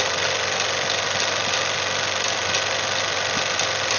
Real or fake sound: real